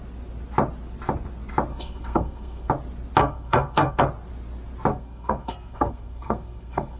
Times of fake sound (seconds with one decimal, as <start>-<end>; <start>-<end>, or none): 1.7-2.7; 3.2-4.0; 4.9-7.0